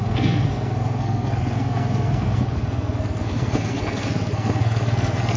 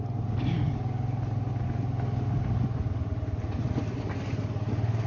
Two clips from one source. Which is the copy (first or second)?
first